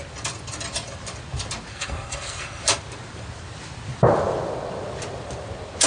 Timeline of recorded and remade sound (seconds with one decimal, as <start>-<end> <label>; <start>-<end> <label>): 0.0-1.7 recorded; 1.7-2.6 remade; 2.6-5.9 recorded